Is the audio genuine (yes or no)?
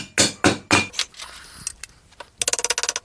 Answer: yes